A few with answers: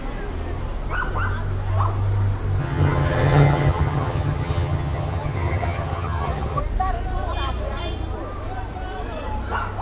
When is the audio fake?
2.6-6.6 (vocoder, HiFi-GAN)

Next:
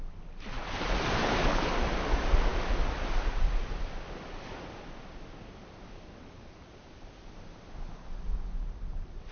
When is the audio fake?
1.2-1.7 (codec, HILCodec)